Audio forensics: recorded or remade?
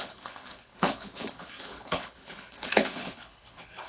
remade